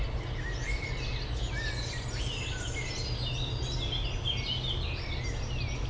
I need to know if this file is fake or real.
real